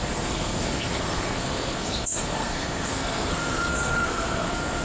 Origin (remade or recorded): remade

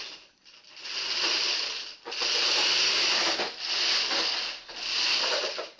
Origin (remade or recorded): recorded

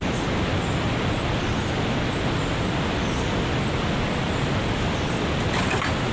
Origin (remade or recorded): recorded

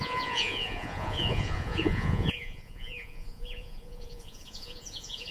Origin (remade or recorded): remade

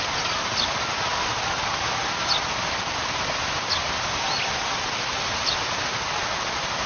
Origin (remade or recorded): recorded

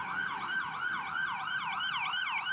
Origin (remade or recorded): recorded